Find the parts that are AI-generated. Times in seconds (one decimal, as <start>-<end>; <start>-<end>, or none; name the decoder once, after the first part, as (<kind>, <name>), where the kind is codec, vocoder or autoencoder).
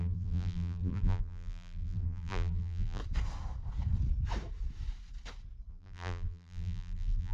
0.0-3.0 (vocoder, BigVGAN v2); 5.7-7.3